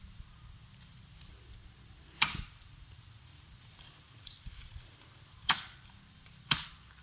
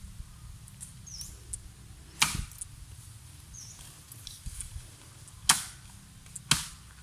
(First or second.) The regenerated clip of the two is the first